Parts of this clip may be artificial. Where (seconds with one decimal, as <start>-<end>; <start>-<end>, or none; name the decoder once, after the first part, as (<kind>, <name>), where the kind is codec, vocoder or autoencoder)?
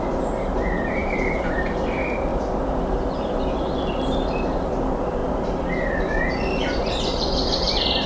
1.0-1.5 (vocoder, BigVGAN v2); 2.3-3.9; 6.6-8.1